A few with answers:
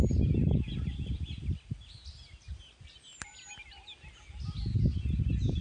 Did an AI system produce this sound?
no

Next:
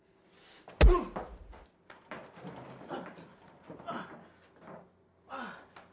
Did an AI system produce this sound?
no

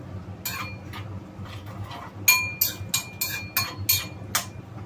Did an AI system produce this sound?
no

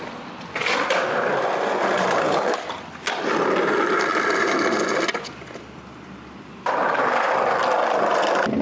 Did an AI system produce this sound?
yes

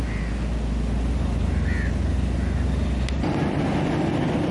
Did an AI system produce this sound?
no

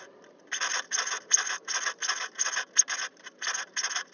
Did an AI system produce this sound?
no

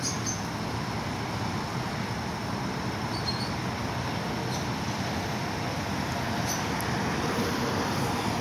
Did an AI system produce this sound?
no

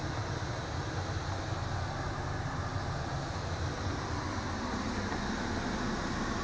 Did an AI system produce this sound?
no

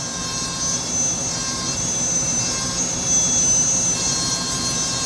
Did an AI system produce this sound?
yes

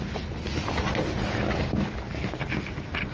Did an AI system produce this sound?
no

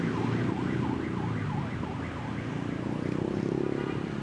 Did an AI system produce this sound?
no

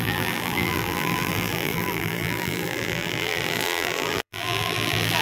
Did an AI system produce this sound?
yes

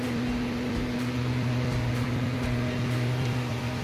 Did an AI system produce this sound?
no